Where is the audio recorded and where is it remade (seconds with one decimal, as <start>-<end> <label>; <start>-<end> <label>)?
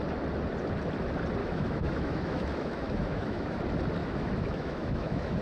0.0-1.4 recorded; 1.4-3.6 remade; 3.6-4.0 recorded; 4.0-5.4 remade